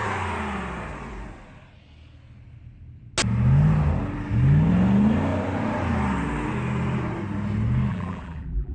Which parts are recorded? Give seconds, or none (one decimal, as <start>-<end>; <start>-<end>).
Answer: 0.0-7.9